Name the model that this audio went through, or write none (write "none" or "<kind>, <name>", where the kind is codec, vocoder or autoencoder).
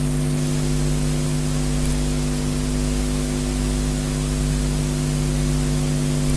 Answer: none